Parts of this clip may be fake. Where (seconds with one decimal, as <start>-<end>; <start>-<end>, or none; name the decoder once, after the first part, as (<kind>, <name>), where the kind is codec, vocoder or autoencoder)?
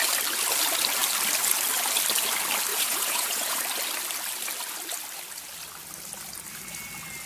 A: 2.7-3.6 (vocoder, Vocos)